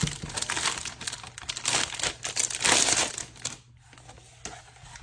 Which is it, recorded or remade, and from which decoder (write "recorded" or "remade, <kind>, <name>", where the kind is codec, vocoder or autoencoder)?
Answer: recorded